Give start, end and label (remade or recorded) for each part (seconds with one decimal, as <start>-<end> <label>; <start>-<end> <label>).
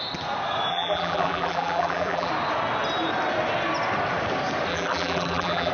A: 0.0-0.7 recorded; 0.7-2.3 remade; 2.3-4.7 recorded; 4.7-5.7 remade